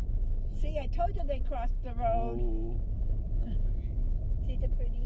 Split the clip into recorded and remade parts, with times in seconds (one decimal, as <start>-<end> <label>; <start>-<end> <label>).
0.0-5.1 recorded